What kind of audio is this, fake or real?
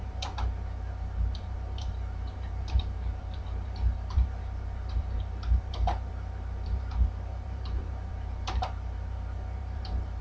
fake